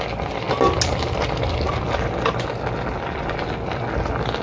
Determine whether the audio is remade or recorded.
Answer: recorded